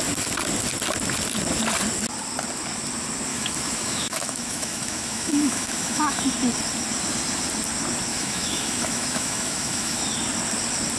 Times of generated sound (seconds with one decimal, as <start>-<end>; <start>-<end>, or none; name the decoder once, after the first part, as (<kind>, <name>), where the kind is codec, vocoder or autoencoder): 3.3-6.2 (autoencoder, DAC-VAE); 8.1-10.0